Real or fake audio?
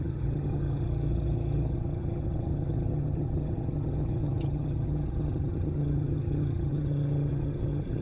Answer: fake